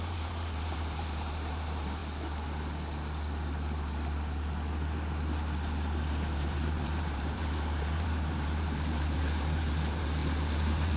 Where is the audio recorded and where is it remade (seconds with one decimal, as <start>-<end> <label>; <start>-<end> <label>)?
0.0-2.0 remade; 2.0-6.1 recorded; 6.1-11.0 remade